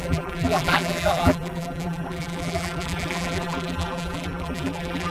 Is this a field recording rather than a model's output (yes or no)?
no